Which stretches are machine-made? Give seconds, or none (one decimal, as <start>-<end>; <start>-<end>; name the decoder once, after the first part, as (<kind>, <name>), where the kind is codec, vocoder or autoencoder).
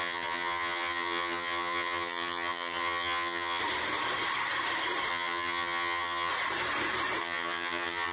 0.0-3.6 (vocoder, HiFi-GAN); 5.1-6.3; 7.2-8.1